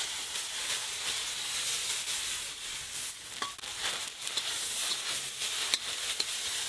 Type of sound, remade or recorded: recorded